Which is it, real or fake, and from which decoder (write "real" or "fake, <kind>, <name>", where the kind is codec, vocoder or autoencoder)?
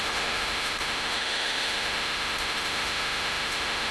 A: fake, autoencoder, DAC-VAE